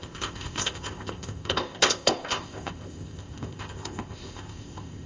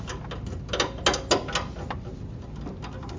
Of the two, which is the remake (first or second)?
first